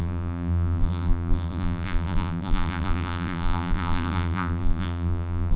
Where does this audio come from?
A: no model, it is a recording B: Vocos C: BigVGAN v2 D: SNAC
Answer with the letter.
C